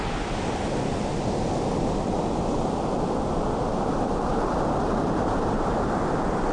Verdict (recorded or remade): recorded